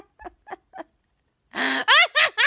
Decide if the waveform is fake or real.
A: real